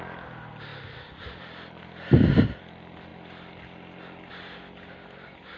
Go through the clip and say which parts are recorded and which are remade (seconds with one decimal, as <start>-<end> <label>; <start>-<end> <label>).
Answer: 0.0-5.6 recorded

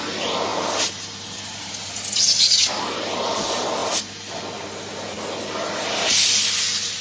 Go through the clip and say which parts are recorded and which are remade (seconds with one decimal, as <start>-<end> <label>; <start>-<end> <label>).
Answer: 0.0-0.5 recorded; 0.5-2.8 remade; 2.8-3.8 recorded; 3.8-4.4 remade; 4.4-7.0 recorded

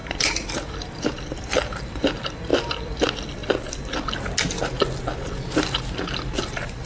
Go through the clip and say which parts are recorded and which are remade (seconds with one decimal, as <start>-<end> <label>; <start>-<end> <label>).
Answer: 0.0-2.1 remade; 2.1-2.5 recorded; 2.5-3.0 remade; 3.0-6.9 recorded

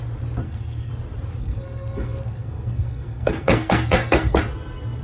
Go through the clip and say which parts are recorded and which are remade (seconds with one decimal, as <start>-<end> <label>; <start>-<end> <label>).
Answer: 0.0-0.4 recorded; 0.4-0.9 remade; 0.9-1.4 recorded; 1.4-4.4 remade; 4.4-5.0 recorded

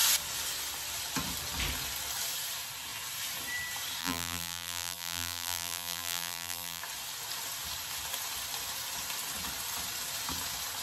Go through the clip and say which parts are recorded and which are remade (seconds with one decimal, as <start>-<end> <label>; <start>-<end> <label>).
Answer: 0.0-4.0 recorded; 4.0-6.8 remade; 6.8-10.8 recorded